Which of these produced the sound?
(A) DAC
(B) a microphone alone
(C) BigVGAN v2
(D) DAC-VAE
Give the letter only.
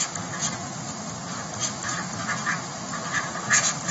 B